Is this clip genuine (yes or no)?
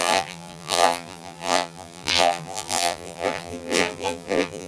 no